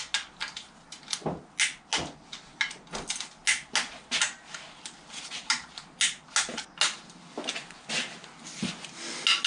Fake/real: real